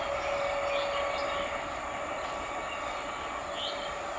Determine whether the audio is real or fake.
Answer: real